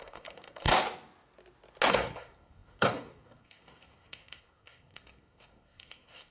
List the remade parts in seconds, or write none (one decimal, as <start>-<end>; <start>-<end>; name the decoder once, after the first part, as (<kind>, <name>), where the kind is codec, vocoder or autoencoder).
0.0-0.7 (codec, SNAC); 1.9-6.3